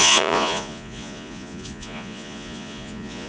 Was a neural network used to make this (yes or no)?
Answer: yes